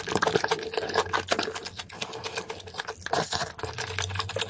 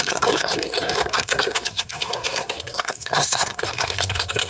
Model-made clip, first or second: second